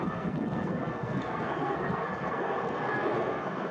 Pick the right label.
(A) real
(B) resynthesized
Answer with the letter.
B